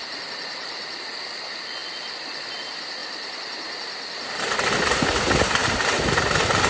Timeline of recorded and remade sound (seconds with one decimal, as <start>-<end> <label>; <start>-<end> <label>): 0.0-3.0 recorded; 3.0-4.3 remade; 4.3-6.7 recorded